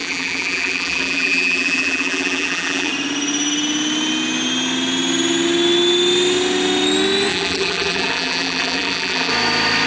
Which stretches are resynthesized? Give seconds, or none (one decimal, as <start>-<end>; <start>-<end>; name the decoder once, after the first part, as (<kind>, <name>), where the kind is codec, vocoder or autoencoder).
0.0-2.9 (vocoder, BigVGAN v2); 7.3-9.3